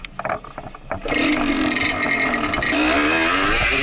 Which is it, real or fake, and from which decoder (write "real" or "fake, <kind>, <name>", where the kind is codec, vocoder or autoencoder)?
real